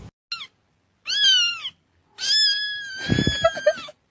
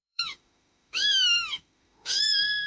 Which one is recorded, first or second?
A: first